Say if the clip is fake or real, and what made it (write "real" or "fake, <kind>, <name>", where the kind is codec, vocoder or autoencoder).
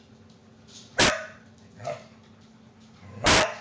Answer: real